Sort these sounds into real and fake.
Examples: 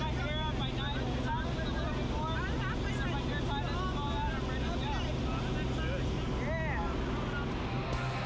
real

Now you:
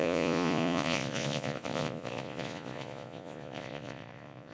fake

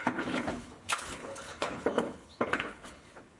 fake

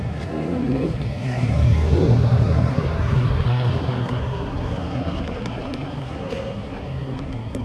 fake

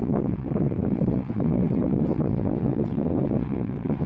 fake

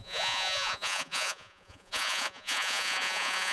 fake